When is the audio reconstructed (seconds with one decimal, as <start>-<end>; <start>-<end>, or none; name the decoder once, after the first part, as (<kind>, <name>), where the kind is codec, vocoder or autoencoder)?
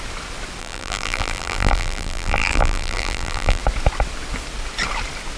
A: 0.6-3.6 (vocoder, BigVGAN v2)